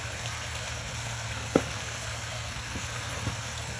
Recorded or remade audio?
remade